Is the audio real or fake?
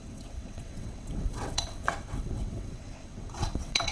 fake